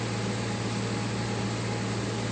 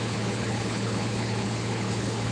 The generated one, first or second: second